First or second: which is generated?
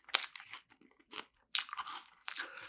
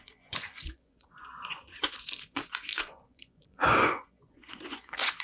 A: second